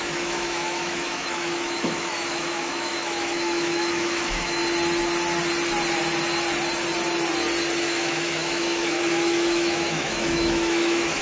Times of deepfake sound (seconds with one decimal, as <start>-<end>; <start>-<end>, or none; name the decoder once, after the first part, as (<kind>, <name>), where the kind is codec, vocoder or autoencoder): 0.0-4.6 (autoencoder, DAC-VAE); 7.8-11.2